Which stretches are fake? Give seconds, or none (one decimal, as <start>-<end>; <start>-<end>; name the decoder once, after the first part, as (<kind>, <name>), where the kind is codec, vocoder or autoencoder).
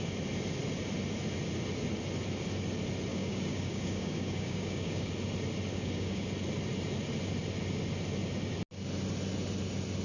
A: 3.1-5.1 (codec, DAC); 5.7-6.3